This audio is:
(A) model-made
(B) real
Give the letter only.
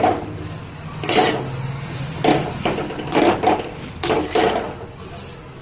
B